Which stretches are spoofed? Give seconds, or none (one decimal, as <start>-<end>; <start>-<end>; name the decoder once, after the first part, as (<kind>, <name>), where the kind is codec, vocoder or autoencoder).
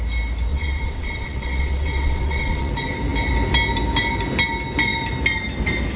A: 0.5-2.7 (vocoder, WaveNeXt)